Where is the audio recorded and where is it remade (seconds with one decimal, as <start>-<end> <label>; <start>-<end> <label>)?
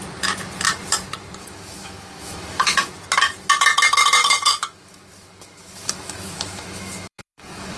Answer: 0.0-1.4 recorded; 1.4-2.9 remade; 2.9-4.2 recorded; 4.2-7.8 remade